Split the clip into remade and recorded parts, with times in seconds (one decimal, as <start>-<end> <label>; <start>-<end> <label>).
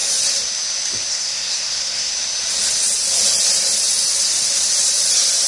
0.0-1.1 recorded; 1.1-2.1 remade; 2.1-5.5 recorded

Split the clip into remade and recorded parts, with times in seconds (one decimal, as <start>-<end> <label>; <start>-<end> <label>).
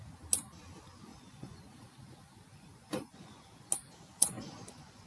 0.0-1.1 recorded; 1.1-1.6 remade; 1.6-2.5 recorded; 2.5-3.7 remade; 3.7-4.2 recorded; 4.2-5.1 remade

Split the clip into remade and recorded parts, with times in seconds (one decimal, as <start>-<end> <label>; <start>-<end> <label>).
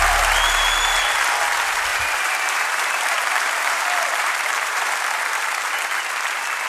0.0-1.9 recorded; 1.9-4.9 remade; 4.9-6.7 recorded